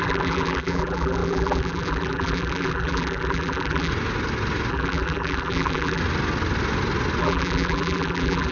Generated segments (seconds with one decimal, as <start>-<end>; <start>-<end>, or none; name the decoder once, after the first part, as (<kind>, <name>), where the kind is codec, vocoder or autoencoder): 0.0-3.9 (vocoder, BigVGAN v2); 4.7-6.0; 7.2-8.5